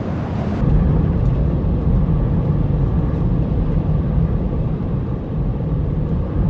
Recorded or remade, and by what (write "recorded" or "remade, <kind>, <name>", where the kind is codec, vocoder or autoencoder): remade, vocoder, BigVGAN v2